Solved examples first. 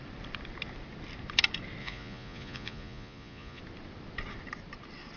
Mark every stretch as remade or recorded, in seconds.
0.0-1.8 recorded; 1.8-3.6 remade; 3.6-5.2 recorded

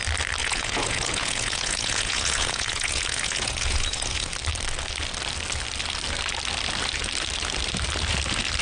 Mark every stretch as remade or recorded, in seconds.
0.0-0.4 recorded; 0.4-4.3 remade; 4.3-8.6 recorded

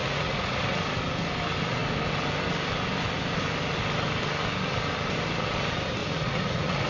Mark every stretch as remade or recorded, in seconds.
0.0-0.6 remade; 0.6-6.0 recorded; 6.0-6.9 remade

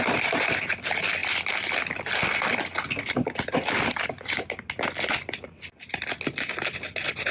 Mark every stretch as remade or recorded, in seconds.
0.0-7.3 recorded

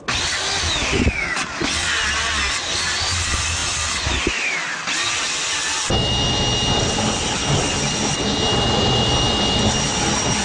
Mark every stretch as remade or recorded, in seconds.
0.0-10.4 recorded

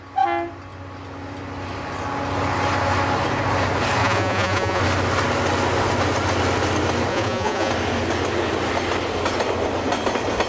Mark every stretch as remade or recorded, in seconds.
0.0-4.0 recorded; 4.0-4.8 remade; 4.8-7.1 recorded; 7.1-7.7 remade; 7.7-10.5 recorded

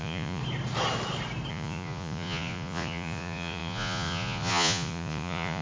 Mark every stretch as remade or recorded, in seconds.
0.0-0.4 remade; 0.4-1.5 recorded; 1.5-5.6 remade